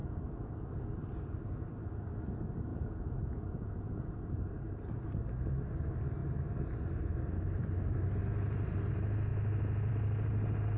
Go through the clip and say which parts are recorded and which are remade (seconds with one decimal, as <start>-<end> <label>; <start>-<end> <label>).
0.0-2.7 recorded; 2.7-4.1 remade; 4.1-10.8 recorded

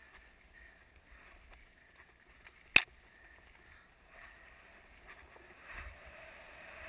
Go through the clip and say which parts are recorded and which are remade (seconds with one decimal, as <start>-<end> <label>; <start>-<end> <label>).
0.0-6.9 recorded

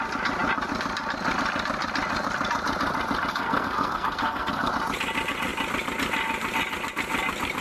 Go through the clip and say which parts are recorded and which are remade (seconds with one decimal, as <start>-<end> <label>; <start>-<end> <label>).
0.0-3.3 recorded; 3.3-4.7 remade; 4.7-7.6 recorded

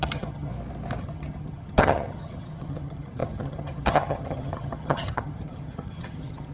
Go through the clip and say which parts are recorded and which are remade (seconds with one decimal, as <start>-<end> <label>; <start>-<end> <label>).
0.0-0.5 remade; 0.5-1.0 recorded; 1.0-6.5 remade

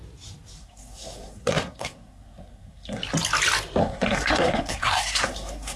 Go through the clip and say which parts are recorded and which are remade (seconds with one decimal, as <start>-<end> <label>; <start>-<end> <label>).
0.0-0.6 recorded; 0.6-3.0 remade; 3.0-3.8 recorded; 3.8-5.8 remade

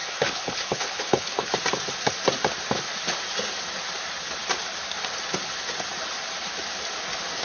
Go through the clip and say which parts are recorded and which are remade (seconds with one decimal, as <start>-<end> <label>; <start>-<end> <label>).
0.0-1.5 remade; 1.5-7.4 recorded